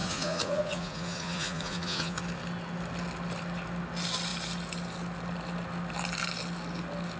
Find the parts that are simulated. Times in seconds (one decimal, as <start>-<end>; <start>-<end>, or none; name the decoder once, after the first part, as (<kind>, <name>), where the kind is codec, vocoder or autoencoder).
0.0-2.2 (vocoder, Vocos)